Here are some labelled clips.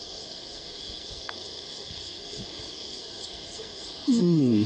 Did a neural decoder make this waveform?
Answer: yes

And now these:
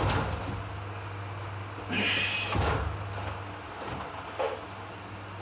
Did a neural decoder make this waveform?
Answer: no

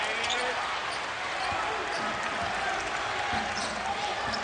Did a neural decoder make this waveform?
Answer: no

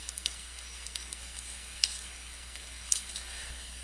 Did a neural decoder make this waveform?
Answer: yes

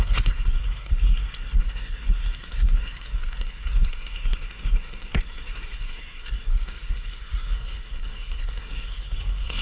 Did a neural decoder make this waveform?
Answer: yes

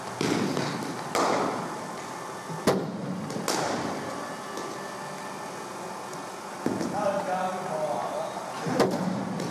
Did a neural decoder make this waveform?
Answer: no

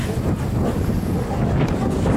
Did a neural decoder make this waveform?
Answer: no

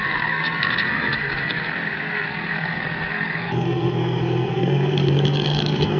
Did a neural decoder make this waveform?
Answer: yes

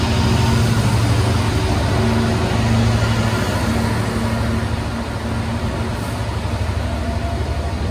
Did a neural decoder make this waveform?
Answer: no